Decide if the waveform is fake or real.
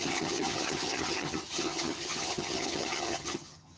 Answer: fake